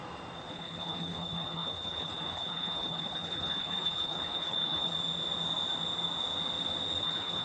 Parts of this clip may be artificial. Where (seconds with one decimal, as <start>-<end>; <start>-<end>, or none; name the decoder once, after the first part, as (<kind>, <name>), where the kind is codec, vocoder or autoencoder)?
0.5-4.9 (codec, HILCodec); 7.0-7.4